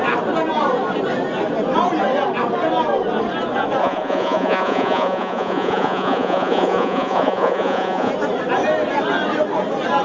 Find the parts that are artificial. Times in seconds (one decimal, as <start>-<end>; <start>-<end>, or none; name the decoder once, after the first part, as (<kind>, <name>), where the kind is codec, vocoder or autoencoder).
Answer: 3.8-8.1 (vocoder, Vocos)